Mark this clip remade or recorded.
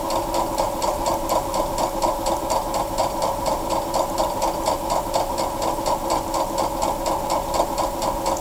recorded